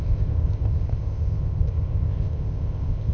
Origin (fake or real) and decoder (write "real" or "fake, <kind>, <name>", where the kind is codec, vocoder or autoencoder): fake, codec, ZipCodec